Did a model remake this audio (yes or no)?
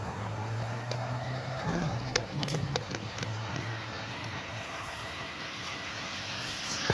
yes